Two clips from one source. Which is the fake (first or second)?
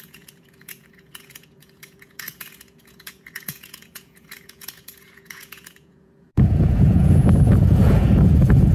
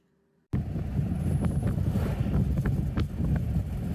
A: first